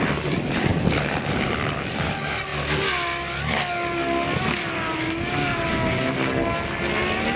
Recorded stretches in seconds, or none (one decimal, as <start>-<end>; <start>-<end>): 0.0-7.4